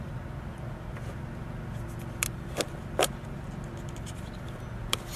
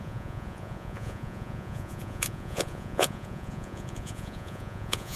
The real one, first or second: first